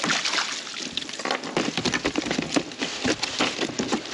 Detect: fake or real real